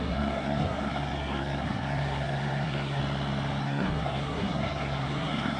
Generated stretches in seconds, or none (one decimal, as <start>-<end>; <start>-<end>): 0.0-3.0; 3.6-5.6